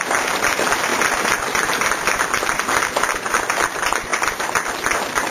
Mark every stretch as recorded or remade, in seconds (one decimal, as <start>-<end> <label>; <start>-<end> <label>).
0.0-5.3 recorded